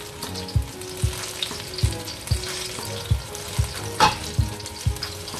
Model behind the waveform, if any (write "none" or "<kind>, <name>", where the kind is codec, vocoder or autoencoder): none